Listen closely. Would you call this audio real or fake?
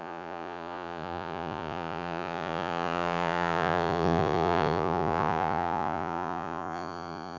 fake